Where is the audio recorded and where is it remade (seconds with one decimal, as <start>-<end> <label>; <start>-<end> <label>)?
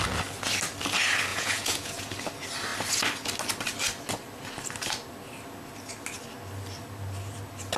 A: 0.0-1.3 recorded; 1.3-2.1 remade; 2.1-7.8 recorded